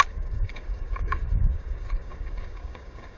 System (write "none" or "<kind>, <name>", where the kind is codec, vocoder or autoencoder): codec, DAC